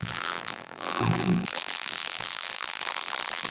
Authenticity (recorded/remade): remade